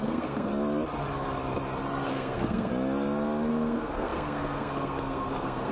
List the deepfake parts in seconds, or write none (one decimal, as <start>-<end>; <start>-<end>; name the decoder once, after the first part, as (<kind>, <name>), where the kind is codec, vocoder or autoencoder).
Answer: 0.0-0.5 (codec, SNAC); 2.1-2.7; 3.5-5.7